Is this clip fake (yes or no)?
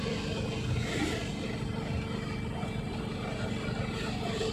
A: no